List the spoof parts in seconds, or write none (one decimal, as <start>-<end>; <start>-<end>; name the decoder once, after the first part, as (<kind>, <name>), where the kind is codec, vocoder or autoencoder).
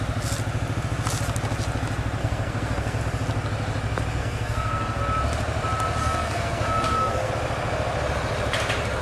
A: 2.2-3.0 (codec, SNAC); 4.2-5.0; 6.0-7.3